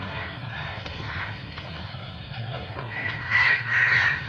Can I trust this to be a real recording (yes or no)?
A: no